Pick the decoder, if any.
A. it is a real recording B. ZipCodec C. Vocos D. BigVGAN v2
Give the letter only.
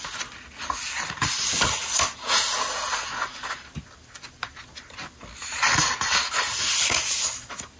A